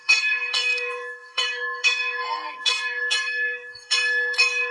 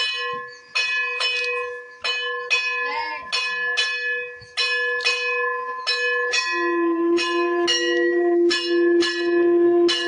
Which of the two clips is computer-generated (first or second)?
first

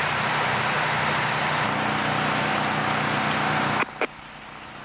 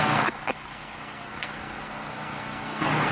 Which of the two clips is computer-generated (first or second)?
second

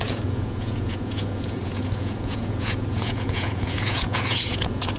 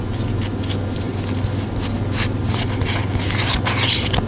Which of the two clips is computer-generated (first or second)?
first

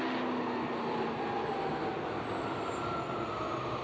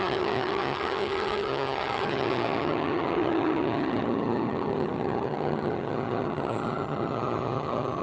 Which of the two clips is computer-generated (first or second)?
second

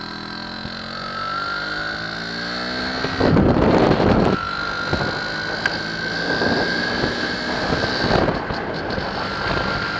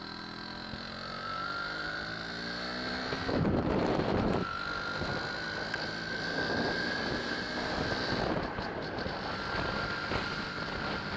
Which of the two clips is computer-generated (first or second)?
second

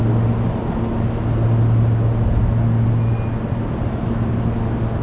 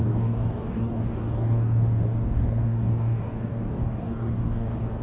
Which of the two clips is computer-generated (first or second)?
second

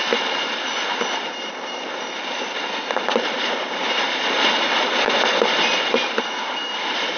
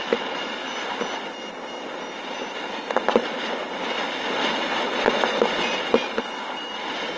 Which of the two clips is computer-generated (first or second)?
first